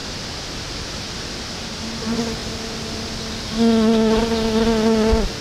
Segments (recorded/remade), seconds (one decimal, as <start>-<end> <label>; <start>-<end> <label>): 0.0-5.4 recorded

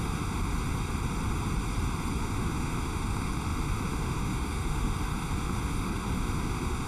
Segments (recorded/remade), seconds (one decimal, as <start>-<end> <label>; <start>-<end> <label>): 0.0-0.5 remade; 0.5-2.2 recorded; 2.2-6.9 remade

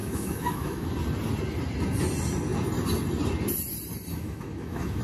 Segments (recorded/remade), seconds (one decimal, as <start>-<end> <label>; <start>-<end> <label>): 0.0-0.9 remade; 0.9-4.1 recorded; 4.1-5.0 remade